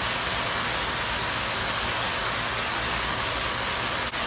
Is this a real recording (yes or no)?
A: yes